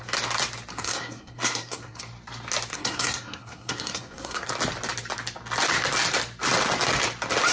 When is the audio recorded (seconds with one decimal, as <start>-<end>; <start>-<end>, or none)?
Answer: 0.0-0.7; 2.0-2.7; 4.5-7.5